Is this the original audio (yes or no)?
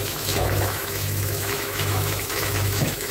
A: no